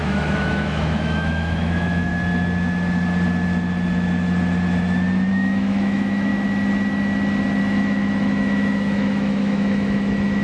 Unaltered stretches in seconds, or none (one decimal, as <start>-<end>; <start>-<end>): 2.1-5.3; 6.3-7.6